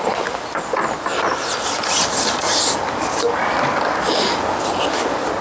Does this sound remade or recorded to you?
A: recorded